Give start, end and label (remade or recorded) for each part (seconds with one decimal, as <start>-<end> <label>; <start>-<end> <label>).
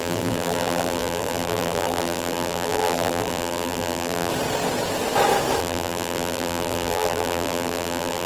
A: 0.0-4.3 remade; 4.3-5.6 recorded; 5.6-8.3 remade